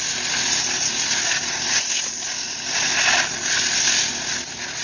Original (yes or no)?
no